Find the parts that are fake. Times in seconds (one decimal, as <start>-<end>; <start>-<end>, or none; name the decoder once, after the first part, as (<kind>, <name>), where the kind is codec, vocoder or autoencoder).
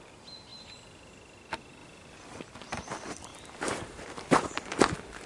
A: 3.3-4.5 (vocoder, BigVGAN v2)